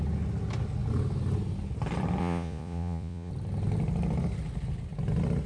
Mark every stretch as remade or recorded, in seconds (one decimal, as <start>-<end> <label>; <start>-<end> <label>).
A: 0.0-2.2 recorded; 2.2-3.3 remade; 3.3-5.5 recorded